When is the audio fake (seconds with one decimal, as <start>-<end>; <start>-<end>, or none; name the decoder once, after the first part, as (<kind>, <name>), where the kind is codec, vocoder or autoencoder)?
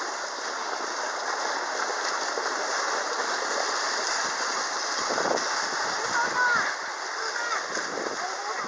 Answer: none